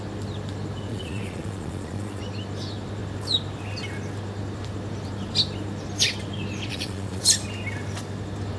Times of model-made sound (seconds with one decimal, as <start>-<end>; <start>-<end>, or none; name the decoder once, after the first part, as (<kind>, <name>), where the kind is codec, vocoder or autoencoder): 0.9-2.2 (vocoder, Vocos); 6.7-7.2